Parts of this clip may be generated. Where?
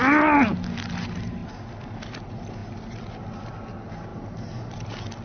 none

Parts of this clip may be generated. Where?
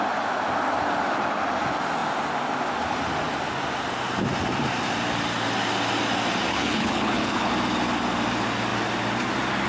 6.5-7.5